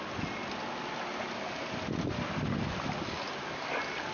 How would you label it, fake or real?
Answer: real